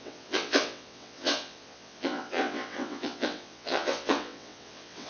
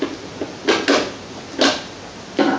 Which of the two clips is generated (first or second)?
first